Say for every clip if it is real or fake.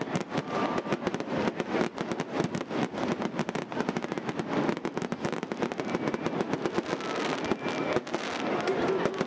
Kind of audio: real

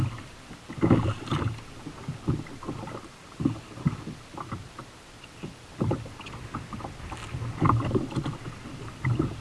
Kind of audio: real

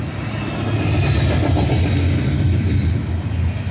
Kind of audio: real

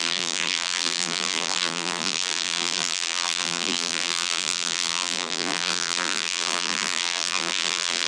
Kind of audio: fake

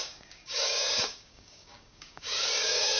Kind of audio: fake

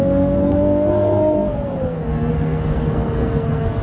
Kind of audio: fake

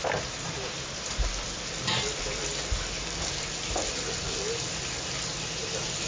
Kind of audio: real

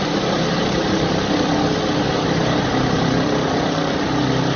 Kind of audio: real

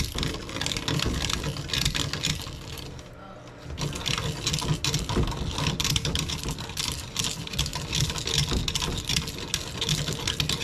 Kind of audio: real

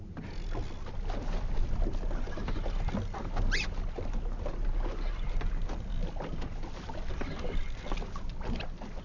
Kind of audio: real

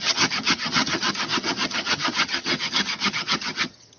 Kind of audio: fake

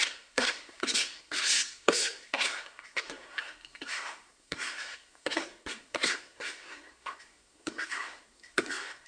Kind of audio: fake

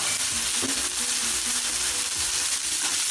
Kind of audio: real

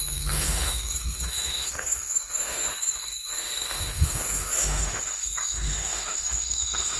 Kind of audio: fake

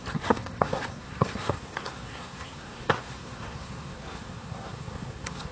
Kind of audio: fake